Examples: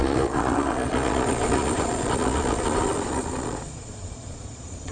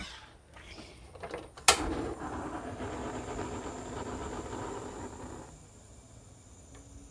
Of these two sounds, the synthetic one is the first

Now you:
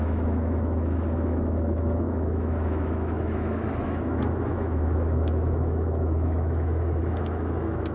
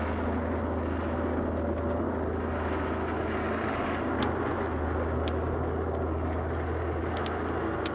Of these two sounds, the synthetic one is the first